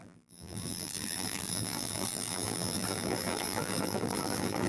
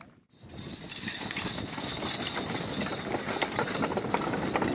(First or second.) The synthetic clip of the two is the first